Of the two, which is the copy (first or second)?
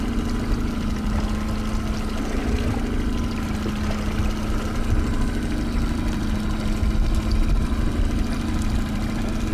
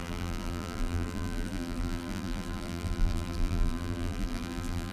second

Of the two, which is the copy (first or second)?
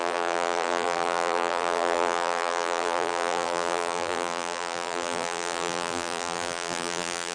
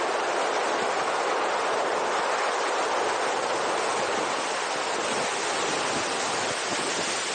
first